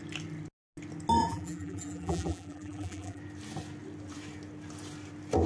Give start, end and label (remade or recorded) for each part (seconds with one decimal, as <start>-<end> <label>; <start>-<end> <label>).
0.0-1.2 recorded; 1.2-3.2 remade; 3.2-5.5 recorded